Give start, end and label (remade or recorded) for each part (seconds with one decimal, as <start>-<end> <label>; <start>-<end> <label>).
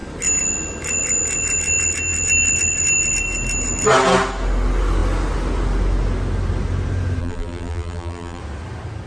0.0-7.2 recorded; 7.2-8.4 remade; 8.4-9.1 recorded